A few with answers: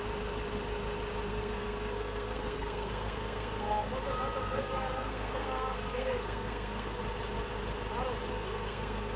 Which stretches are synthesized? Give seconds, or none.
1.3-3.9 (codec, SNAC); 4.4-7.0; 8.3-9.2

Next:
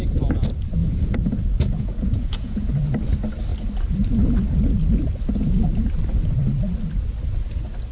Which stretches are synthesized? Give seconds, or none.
0.8-2.7 (vocoder, Vocos)

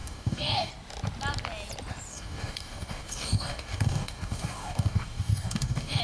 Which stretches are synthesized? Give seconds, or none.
0.0-0.7 (codec, DAC); 2.1-6.0

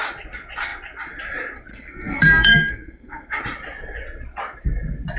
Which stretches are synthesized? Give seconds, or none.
1.7-3.4 (codec, SNAC)

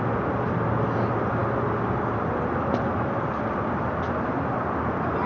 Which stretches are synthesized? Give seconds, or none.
none

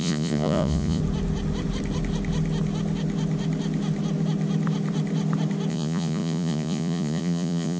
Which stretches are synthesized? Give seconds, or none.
0.0-1.0 (vocoder, Vocos); 5.7-7.8

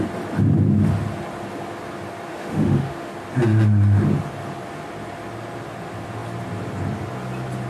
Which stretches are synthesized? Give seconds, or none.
2.3-3.1 (autoencoder, DAC-VAE)

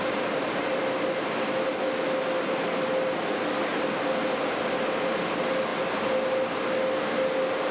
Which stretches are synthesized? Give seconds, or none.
none